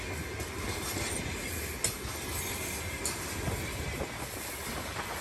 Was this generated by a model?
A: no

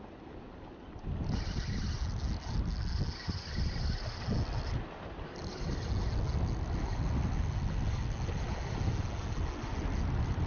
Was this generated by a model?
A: no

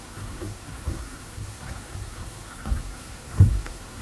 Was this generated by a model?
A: yes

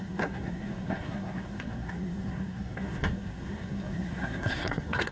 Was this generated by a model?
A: yes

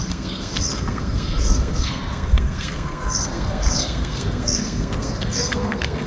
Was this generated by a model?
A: yes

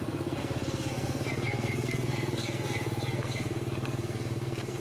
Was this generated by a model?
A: yes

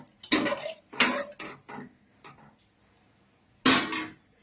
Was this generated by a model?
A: no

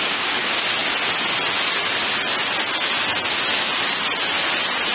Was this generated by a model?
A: no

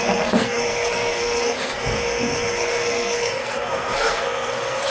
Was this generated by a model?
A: yes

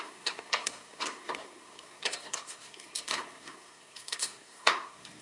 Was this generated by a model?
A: yes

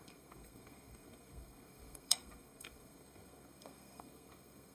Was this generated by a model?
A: yes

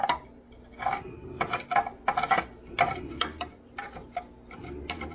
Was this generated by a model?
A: no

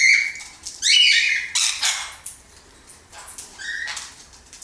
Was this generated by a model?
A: no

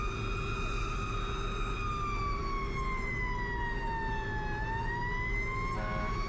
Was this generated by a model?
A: no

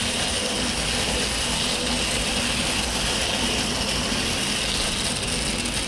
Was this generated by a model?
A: no